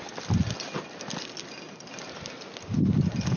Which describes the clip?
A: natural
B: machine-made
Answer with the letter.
A